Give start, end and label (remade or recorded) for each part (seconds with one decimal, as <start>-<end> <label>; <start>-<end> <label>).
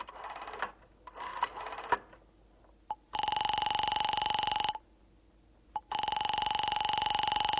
0.0-7.6 recorded